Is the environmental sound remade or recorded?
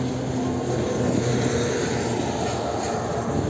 recorded